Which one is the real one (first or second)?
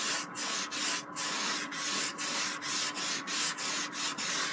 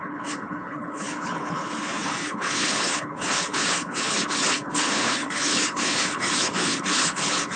first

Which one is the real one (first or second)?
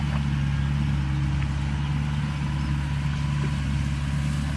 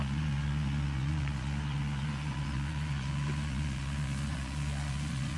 first